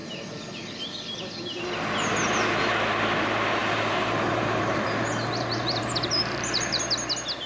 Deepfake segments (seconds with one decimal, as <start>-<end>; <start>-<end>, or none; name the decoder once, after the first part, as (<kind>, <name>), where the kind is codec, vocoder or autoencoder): 3.6-6.8 (vocoder, BigVGAN v2)

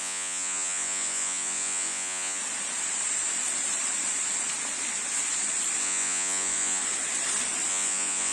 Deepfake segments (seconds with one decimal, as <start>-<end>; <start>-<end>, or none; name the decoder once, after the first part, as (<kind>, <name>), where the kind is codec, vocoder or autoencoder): 0.0-2.4 (vocoder, Vocos); 5.8-6.8; 7.7-8.3